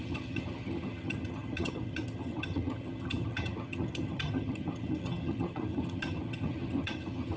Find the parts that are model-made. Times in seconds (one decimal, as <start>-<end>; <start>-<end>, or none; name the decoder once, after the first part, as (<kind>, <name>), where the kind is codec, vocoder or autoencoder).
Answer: 0.0-7.4 (vocoder, HiFi-GAN)